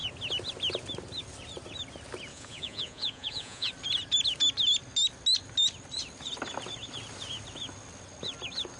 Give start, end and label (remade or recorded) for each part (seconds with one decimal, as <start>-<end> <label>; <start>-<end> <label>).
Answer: 0.0-2.3 recorded; 2.3-3.7 remade; 3.7-8.8 recorded